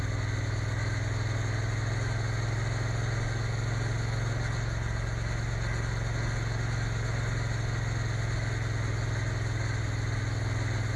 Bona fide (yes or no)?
yes